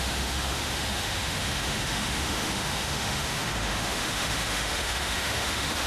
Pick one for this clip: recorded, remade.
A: remade